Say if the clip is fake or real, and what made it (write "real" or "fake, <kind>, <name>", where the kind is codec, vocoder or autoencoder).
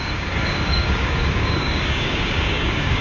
fake, codec, DAC